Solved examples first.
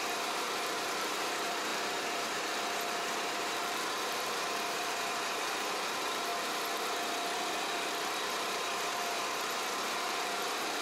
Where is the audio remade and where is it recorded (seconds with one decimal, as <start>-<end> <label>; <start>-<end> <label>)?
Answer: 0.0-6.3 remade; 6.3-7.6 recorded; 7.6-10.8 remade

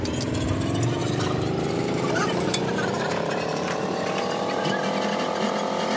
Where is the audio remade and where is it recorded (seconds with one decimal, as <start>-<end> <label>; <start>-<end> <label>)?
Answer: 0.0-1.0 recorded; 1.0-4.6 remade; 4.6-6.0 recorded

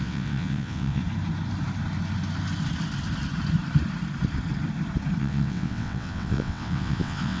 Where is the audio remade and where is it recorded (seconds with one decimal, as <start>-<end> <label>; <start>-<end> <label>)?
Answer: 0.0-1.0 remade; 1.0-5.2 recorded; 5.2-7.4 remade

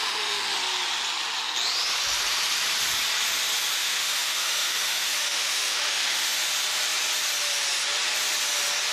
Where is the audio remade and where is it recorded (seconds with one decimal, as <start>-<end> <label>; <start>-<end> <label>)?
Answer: 0.0-0.6 remade; 0.6-3.8 recorded; 3.8-6.4 remade; 6.4-8.9 recorded

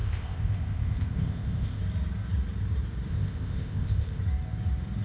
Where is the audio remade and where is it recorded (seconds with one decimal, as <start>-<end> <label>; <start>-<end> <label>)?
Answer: 0.0-1.8 remade; 1.8-3.1 recorded; 3.1-4.2 remade; 4.2-5.0 recorded

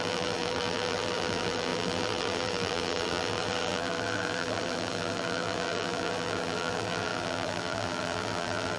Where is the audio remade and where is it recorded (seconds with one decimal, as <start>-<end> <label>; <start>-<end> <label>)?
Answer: 0.0-8.8 remade